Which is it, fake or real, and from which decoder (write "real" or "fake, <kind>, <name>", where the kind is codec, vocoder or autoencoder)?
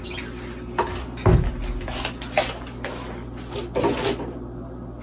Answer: real